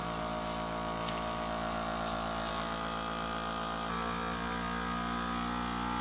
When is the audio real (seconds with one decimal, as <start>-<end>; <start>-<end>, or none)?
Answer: 0.0-6.0